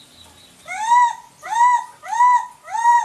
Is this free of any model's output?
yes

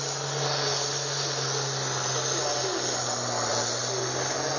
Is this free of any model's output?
yes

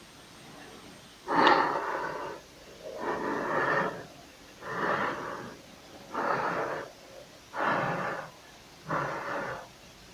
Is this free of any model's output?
yes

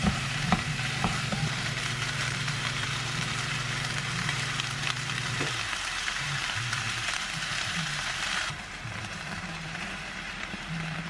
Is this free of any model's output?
no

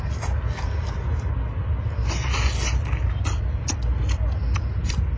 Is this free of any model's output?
yes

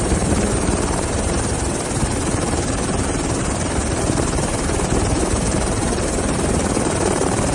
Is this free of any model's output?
no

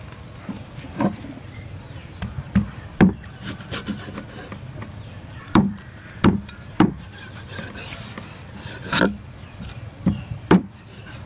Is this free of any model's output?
no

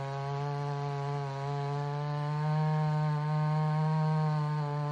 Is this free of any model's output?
yes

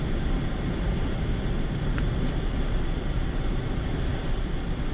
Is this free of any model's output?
no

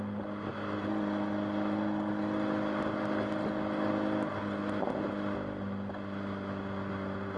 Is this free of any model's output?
yes